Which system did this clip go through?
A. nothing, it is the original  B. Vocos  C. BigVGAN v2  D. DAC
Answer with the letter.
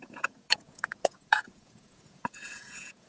B